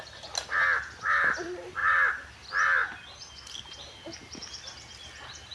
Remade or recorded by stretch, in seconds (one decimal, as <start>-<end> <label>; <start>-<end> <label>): 0.0-5.5 recorded